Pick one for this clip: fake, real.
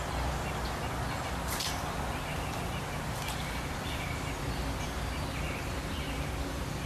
real